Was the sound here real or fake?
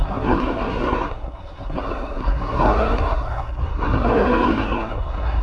fake